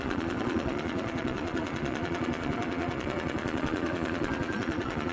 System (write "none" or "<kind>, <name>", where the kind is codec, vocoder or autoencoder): vocoder, Vocos